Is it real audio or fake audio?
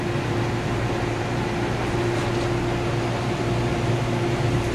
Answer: real